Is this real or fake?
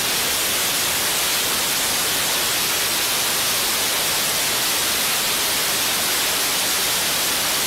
real